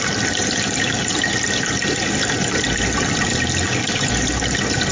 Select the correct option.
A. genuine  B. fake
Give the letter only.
A